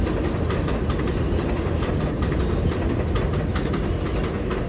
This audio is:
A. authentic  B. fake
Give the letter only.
A